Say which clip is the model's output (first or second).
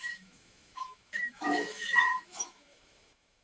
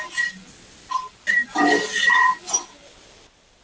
first